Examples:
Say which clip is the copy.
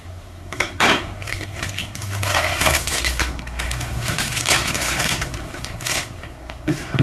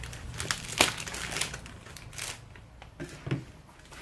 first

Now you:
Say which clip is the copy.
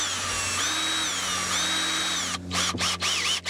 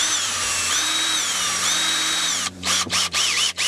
second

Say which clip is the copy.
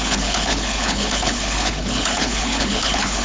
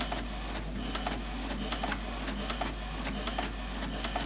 first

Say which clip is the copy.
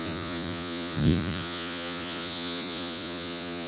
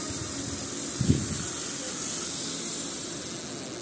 first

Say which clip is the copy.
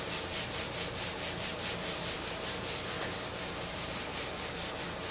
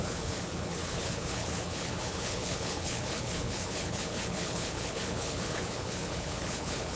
second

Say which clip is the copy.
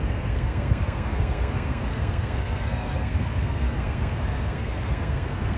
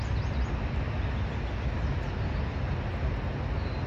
first